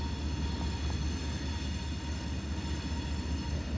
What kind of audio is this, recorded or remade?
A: recorded